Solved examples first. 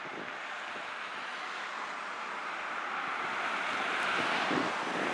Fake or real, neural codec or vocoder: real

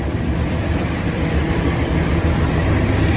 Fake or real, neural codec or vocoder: real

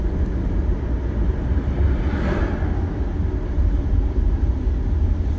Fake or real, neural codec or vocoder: real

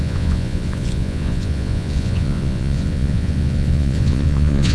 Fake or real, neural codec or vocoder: fake, vocoder, Vocos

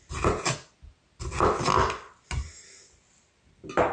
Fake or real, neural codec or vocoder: real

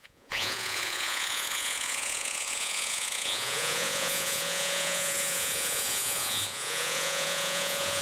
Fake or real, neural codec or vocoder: fake, vocoder, Vocos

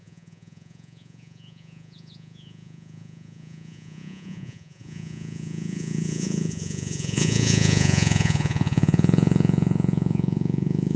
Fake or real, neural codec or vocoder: fake, vocoder, Vocos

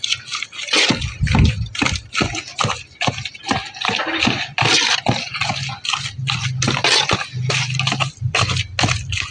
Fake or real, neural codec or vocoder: real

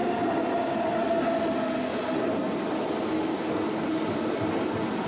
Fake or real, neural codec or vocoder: real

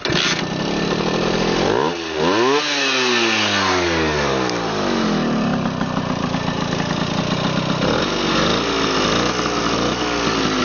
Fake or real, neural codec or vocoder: real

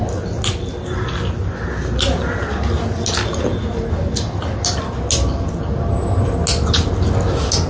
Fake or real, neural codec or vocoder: real